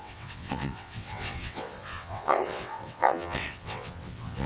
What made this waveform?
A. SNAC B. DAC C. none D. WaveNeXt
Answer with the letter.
D